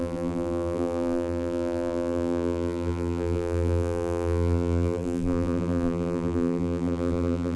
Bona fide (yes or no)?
no